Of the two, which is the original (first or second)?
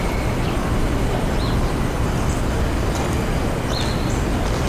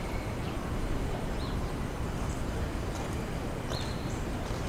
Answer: first